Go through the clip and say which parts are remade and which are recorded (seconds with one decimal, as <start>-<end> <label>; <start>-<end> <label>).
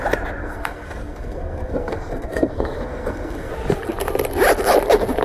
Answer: 0.0-0.4 recorded; 0.4-3.5 remade; 3.5-5.2 recorded